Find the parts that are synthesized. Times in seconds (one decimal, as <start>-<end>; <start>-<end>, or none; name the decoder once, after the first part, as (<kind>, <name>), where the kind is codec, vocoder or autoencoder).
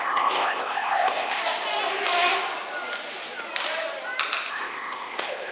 0.0-1.4 (codec, ZipCodec); 4.5-5.5